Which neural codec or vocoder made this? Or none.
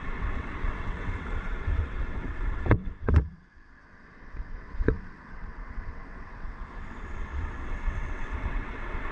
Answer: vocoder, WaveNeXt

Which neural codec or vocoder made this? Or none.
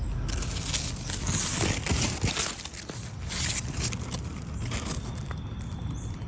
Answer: none